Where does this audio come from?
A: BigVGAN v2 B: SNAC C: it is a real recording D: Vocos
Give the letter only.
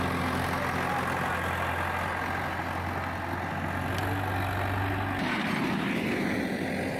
C